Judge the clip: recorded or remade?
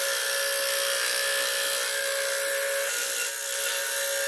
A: recorded